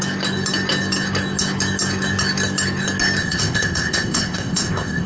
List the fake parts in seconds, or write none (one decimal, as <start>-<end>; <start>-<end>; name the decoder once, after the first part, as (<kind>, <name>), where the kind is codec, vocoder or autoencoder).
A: 3.2-5.1 (codec, ZipCodec)